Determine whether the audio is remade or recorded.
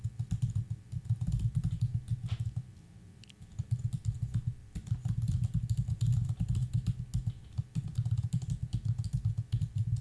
recorded